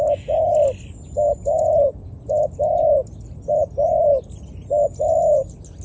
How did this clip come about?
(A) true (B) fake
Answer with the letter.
A